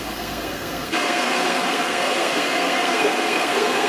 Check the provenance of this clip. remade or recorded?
remade